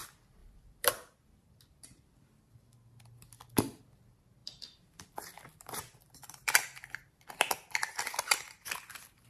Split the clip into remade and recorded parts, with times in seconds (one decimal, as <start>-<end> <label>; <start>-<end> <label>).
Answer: 0.0-0.4 recorded; 0.4-0.9 remade; 0.9-4.4 recorded; 4.4-7.5 remade; 7.5-9.3 recorded